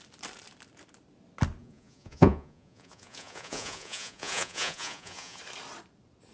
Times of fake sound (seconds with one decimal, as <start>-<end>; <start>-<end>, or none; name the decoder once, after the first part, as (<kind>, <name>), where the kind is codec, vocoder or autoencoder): 1.6-5.4 (vocoder, Vocos)